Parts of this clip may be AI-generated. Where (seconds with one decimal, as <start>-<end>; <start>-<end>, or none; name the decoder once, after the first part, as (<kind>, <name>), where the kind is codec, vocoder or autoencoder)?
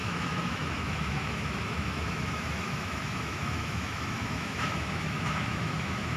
0.0-6.2 (autoencoder, DAC-VAE)